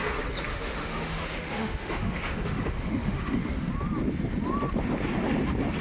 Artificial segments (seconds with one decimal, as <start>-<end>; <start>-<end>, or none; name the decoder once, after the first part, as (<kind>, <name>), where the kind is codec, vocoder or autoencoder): 0.5-3.7 (autoencoder, DAC-VAE)